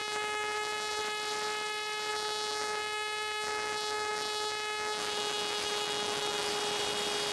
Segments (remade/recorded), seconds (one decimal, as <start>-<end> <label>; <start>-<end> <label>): 0.0-1.0 remade; 1.0-2.1 recorded; 2.1-6.5 remade; 6.5-7.3 recorded